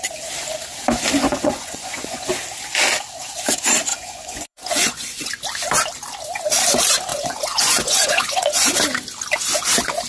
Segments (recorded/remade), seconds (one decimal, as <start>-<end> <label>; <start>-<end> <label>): 0.0-1.2 recorded; 1.2-2.3 remade; 2.3-3.9 recorded; 3.9-5.3 remade; 5.3-7.1 recorded; 7.1-8.8 remade; 8.8-10.1 recorded